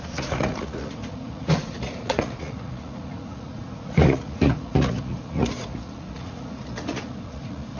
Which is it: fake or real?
fake